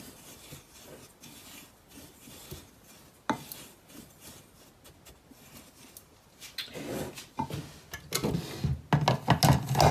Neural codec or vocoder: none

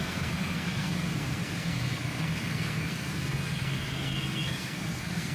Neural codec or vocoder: codec, SNAC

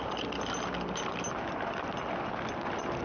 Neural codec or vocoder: none